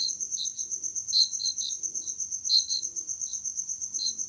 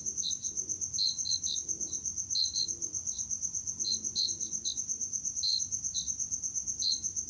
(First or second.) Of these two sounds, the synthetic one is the first